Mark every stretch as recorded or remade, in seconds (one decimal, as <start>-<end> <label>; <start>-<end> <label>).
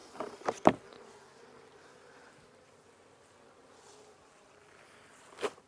0.0-0.8 recorded; 0.8-5.7 remade